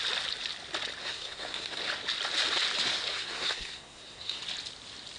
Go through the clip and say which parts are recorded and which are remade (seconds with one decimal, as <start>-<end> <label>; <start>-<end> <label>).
0.0-1.0 recorded; 1.0-1.8 remade; 1.8-3.1 recorded; 3.1-4.4 remade; 4.4-5.2 recorded